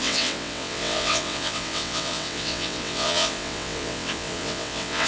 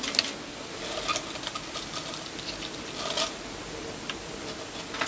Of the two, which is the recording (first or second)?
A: second